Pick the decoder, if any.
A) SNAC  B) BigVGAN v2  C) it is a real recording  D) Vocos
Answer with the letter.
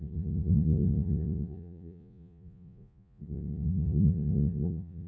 D